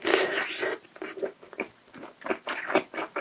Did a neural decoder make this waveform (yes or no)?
no